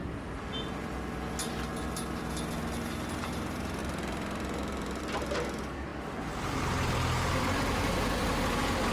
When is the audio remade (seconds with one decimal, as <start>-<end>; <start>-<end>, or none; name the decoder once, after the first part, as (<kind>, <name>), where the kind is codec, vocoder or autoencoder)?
3.8-5.0 (vocoder, BigVGAN v2); 5.9-8.4